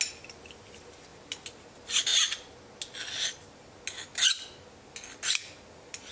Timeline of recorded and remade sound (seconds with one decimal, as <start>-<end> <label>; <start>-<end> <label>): 0.0-6.1 recorded